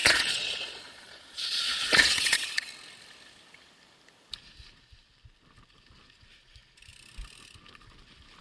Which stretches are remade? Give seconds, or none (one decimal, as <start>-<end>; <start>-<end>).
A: 0.0-2.7